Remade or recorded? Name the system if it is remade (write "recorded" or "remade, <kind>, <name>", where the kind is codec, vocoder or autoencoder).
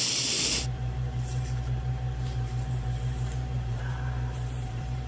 remade, vocoder, BigVGAN v2